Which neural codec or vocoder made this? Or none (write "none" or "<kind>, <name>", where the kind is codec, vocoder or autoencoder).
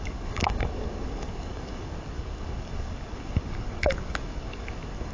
codec, DAC